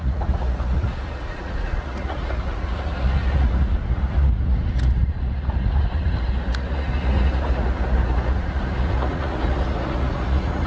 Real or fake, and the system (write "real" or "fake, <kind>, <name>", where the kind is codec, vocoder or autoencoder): fake, vocoder, Vocos